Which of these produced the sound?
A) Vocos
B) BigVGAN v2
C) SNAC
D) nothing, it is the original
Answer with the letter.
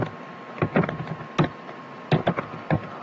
D